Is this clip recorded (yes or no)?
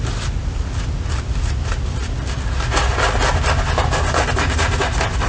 yes